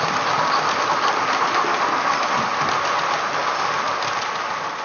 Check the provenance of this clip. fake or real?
real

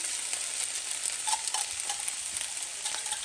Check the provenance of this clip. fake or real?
real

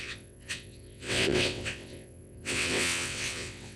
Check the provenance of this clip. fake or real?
fake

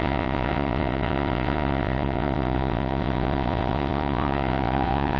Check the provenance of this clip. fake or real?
fake